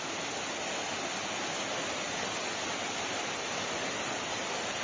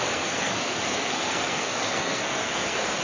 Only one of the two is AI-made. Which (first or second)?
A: second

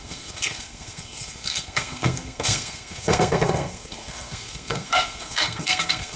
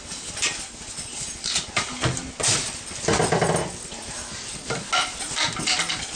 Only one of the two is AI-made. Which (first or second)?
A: first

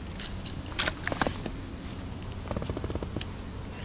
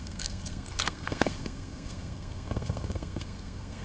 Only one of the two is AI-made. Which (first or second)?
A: second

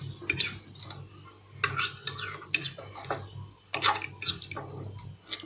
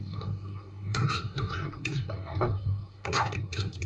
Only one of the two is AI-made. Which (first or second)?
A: second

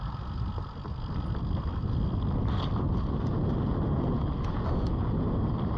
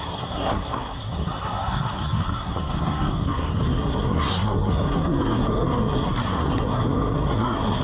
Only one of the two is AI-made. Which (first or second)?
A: second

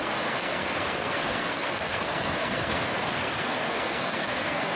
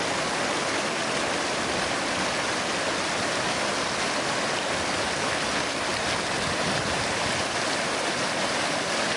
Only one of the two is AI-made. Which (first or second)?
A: first